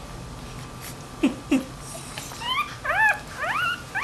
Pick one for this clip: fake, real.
real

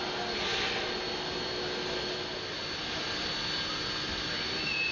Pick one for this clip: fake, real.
real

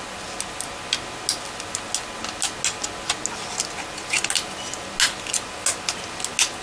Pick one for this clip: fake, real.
real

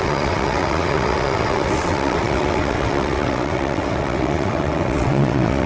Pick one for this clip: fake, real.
fake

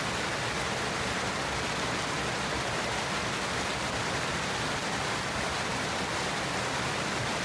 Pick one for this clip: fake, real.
real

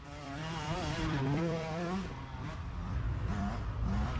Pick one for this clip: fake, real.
fake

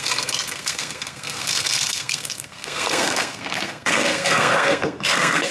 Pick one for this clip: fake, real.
fake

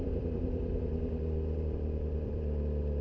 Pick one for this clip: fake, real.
fake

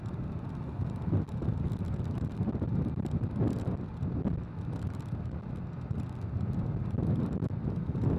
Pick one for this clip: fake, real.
real